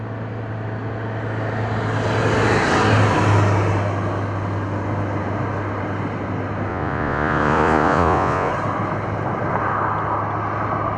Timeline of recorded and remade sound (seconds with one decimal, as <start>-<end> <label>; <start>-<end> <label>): 0.0-6.7 recorded; 6.7-8.5 remade; 8.5-11.0 recorded